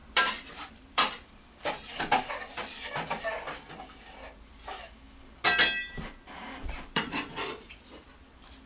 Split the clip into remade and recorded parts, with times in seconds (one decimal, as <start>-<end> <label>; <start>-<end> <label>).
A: 0.0-2.3 remade; 2.3-6.6 recorded; 6.6-8.1 remade; 8.1-8.7 recorded